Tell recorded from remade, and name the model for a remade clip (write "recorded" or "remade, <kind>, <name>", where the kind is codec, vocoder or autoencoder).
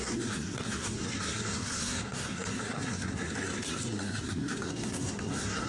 remade, codec, SNAC